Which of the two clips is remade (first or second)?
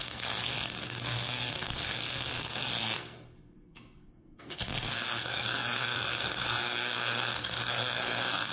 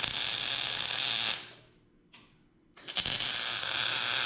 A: first